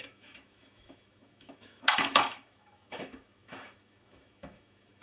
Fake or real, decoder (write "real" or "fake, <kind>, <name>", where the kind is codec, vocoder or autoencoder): fake, autoencoder, DAC-VAE